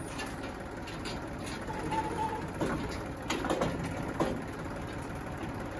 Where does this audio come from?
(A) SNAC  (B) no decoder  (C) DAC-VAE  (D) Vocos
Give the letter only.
B